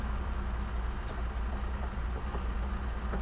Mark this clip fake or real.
real